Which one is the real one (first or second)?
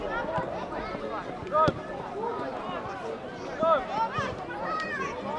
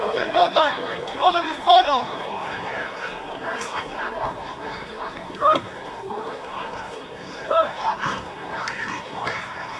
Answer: first